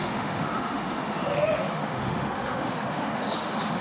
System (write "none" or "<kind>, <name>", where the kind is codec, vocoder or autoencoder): autoencoder, DAC-VAE